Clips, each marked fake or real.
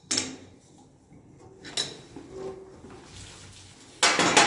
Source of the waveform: real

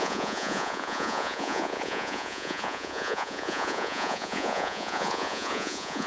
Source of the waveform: fake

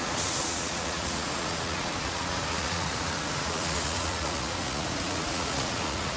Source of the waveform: fake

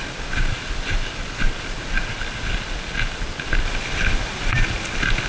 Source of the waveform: real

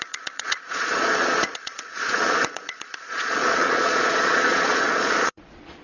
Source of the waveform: fake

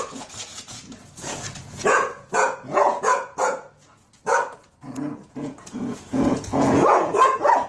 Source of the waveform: fake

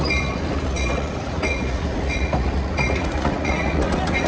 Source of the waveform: fake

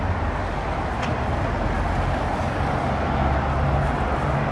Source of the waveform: real